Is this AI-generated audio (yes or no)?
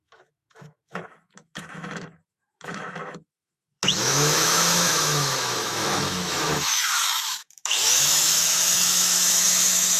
yes